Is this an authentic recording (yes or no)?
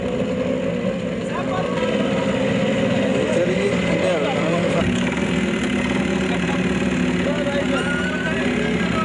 yes